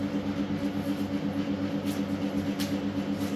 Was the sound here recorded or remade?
recorded